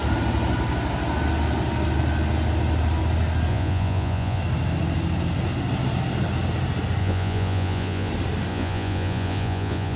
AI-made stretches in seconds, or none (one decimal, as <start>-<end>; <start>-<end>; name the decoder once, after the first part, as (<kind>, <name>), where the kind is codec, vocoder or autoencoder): 3.5-4.4 (vocoder, Vocos); 7.0-8.1; 8.5-10.0